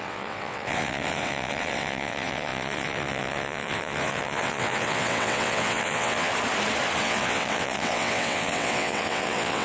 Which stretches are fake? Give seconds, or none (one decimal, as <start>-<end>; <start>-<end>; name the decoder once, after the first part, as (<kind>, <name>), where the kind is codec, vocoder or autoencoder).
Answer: 0.0-6.3 (vocoder, WaveNeXt); 7.0-9.6